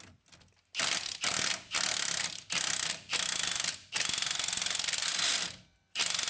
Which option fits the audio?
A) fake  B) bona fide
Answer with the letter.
B